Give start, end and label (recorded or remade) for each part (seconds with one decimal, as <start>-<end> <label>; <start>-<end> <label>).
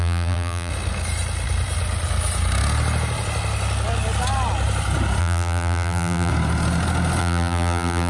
0.0-0.7 remade; 0.7-5.2 recorded; 5.2-6.3 remade; 6.3-7.2 recorded; 7.2-8.1 remade